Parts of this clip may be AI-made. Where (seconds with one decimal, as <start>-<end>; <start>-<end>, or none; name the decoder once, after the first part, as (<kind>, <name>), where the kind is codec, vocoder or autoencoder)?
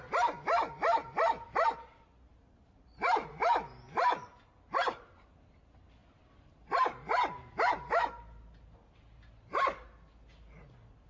2.3-3.3 (vocoder, BigVGAN v2)